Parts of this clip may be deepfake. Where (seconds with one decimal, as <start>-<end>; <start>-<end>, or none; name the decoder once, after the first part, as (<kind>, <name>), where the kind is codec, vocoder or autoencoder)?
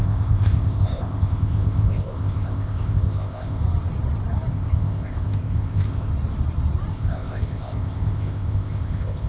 0.0-3.6 (codec, ZipCodec); 4.5-6.1; 6.9-9.3